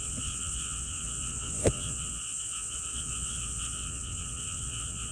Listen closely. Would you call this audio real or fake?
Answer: fake